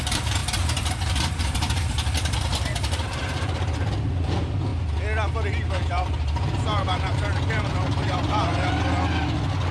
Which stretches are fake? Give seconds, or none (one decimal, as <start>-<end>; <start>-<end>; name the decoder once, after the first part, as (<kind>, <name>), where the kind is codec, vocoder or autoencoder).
0.0-4.7 (vocoder, BigVGAN v2); 5.9-8.5